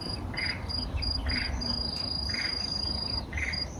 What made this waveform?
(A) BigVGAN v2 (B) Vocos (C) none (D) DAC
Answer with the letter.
A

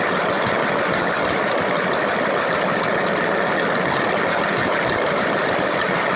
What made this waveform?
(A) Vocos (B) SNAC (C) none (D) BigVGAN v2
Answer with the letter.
C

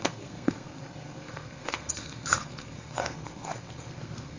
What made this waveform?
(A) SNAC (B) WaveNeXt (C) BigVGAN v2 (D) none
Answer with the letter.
A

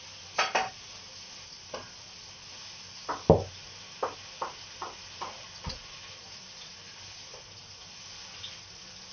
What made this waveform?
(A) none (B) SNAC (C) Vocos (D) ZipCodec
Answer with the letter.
A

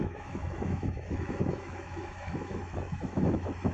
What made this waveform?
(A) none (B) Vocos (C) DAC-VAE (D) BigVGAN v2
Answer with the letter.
C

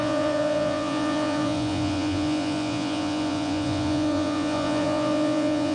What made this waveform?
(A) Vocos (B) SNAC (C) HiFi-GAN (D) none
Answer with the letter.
A